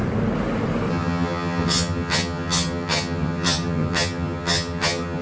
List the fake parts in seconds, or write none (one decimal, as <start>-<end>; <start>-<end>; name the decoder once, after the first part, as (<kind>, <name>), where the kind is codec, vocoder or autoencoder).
0.9-5.2 (vocoder, HiFi-GAN)

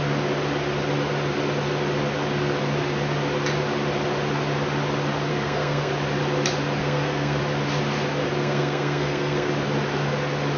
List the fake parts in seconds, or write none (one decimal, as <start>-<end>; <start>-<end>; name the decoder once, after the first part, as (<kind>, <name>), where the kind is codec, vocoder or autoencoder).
5.3-5.9 (codec, SNAC); 6.8-7.4; 8.4-9.5

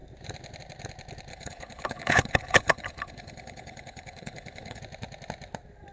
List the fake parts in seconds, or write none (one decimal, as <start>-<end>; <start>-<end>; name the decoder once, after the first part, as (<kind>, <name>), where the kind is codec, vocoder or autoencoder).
1.3-4.8 (codec, HILCodec)

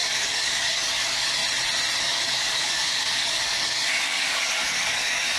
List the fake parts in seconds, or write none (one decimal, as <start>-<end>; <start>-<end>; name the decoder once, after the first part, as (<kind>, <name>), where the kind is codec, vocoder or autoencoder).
0.0-1.4 (codec, DAC); 2.0-5.4

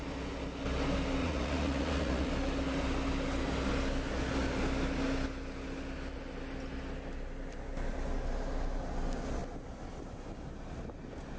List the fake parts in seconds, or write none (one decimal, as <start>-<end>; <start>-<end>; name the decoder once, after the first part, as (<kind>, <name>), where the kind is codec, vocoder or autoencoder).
1.2-2.3 (vocoder, Vocos)